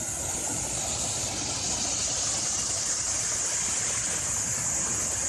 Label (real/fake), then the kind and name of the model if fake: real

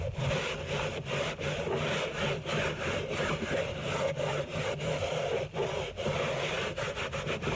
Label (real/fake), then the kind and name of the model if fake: real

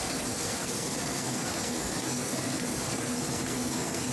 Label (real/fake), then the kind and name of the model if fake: fake, codec, SNAC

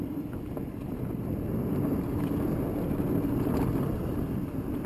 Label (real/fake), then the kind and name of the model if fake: real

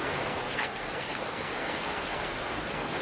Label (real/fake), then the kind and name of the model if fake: fake, codec, SNAC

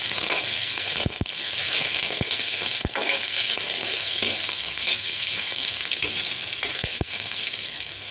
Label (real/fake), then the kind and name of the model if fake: fake, codec, SNAC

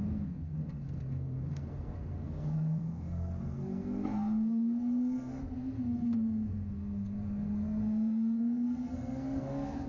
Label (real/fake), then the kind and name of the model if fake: fake, codec, SNAC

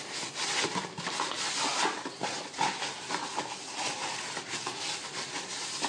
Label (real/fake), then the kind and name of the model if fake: real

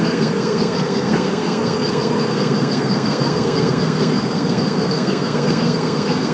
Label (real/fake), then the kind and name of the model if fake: fake, codec, SNAC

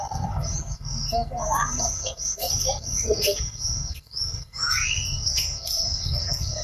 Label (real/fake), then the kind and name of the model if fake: fake, codec, SNAC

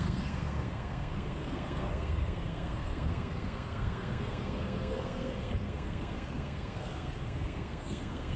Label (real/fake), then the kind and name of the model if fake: fake, codec, SNAC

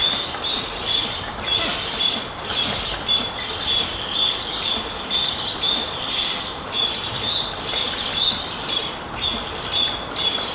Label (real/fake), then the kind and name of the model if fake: real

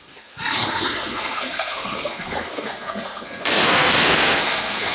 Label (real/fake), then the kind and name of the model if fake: fake, codec, SNAC